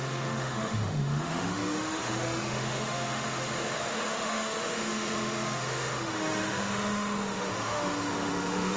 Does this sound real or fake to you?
fake